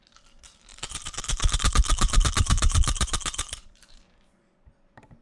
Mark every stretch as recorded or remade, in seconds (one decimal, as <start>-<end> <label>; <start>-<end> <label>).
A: 0.0-0.7 recorded; 0.7-1.2 remade; 1.2-1.8 recorded; 1.8-4.0 remade; 4.0-5.2 recorded